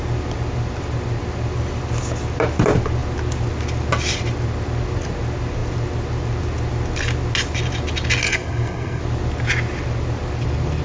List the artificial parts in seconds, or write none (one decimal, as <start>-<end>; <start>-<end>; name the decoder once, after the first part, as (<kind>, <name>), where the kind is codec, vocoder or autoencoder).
8.2-9.0 (codec, SNAC)